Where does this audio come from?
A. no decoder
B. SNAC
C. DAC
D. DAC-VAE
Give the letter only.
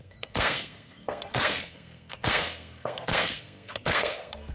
B